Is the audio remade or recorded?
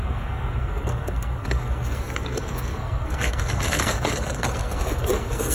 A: remade